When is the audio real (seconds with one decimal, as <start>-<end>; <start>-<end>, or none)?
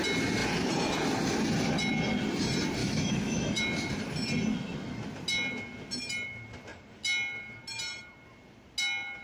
0.0-2.8; 3.6-9.2